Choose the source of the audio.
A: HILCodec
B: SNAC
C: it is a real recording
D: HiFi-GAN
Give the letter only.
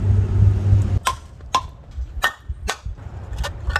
C